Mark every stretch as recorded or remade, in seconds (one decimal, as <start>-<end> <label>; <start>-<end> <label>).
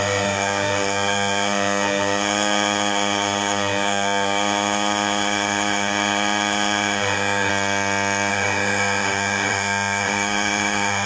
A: 0.0-7.5 remade; 7.5-8.3 recorded; 8.3-11.1 remade